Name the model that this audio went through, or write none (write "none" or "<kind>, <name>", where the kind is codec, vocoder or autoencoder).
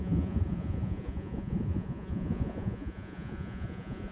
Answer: vocoder, Vocos